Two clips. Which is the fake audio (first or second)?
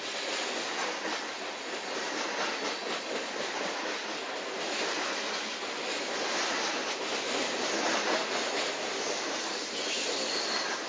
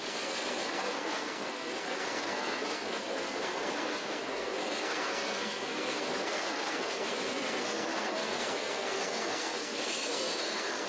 second